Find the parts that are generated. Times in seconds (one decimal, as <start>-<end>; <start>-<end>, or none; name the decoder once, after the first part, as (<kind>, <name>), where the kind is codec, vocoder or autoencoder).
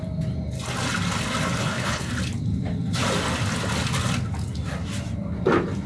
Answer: 1.6-2.1 (codec, HILCodec)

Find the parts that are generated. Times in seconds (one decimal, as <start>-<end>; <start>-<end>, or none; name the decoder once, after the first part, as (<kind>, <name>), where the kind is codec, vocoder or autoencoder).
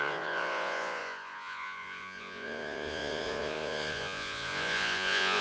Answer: 0.0-5.4 (vocoder, Vocos)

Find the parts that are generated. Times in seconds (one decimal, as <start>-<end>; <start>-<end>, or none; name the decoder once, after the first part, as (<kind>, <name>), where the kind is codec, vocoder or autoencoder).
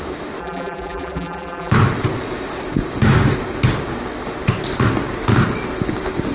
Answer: 0.4-1.7 (vocoder, BigVGAN v2)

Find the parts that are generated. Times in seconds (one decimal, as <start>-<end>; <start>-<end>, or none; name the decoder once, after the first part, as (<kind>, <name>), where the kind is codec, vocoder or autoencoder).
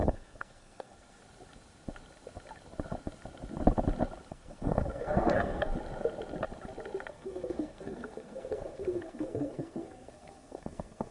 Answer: 0.0-1.2 (codec, SNAC); 4.3-5.7; 7.1-11.1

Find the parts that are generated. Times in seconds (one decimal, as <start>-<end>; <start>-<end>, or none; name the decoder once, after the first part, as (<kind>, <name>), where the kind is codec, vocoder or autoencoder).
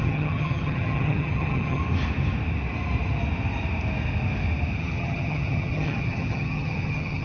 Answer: 0.0-1.8 (vocoder, HiFi-GAN); 4.8-7.2